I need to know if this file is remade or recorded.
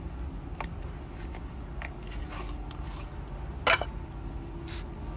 recorded